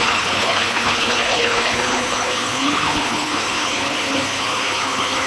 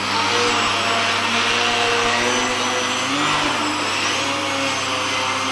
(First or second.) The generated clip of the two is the first